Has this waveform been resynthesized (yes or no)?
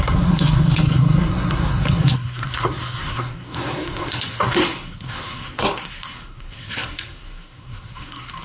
yes